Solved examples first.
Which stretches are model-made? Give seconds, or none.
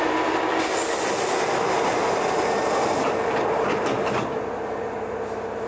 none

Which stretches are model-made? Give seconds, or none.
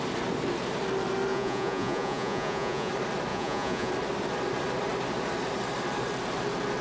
1.3-2.9; 3.3-3.9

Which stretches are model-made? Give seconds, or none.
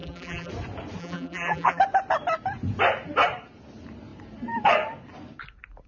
0.0-0.5; 1.0-1.8